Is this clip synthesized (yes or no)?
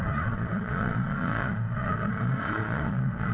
yes